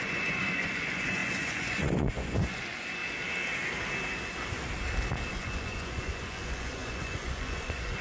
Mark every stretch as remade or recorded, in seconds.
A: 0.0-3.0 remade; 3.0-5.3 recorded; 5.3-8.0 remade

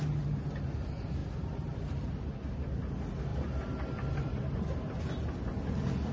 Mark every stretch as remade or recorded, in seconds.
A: 0.0-1.2 recorded; 1.2-2.3 remade; 2.3-3.3 recorded; 3.3-4.6 remade; 4.6-6.1 recorded

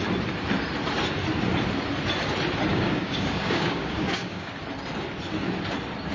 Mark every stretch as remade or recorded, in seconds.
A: 0.0-2.7 recorded; 2.7-4.5 remade; 4.5-6.1 recorded